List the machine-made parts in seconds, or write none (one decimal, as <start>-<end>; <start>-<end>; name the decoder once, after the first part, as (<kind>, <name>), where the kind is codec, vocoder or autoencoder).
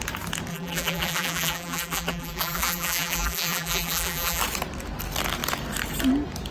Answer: 0.5-4.4 (vocoder, BigVGAN v2)